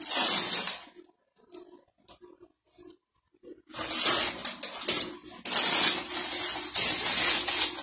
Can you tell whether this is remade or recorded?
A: recorded